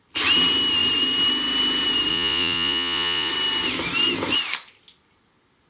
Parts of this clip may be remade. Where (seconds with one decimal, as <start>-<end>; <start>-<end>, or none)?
2.1-3.3